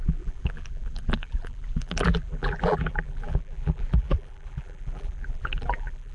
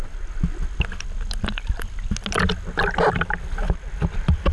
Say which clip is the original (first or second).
second